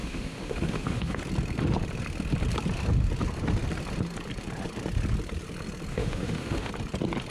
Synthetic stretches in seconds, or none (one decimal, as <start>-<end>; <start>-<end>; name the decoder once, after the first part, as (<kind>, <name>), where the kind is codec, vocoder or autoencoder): 0.0-1.2 (autoencoder, DAC-VAE); 5.9-6.7